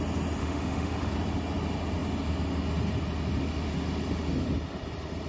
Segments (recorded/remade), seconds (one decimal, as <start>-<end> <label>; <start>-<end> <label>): 0.0-0.4 recorded; 0.4-1.1 remade; 1.1-5.3 recorded